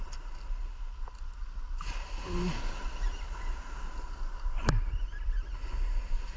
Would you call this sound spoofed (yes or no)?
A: no